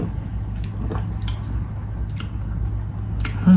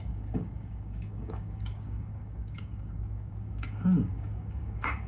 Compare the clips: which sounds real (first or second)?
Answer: first